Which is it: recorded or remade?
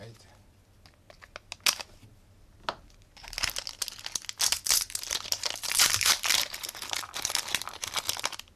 recorded